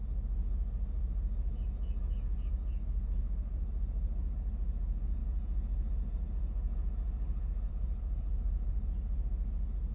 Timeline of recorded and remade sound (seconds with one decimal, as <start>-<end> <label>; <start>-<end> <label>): 0.0-9.9 recorded